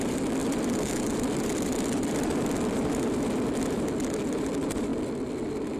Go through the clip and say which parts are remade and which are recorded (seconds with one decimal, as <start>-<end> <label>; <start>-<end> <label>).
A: 0.0-0.4 recorded; 0.4-3.9 remade; 3.9-5.8 recorded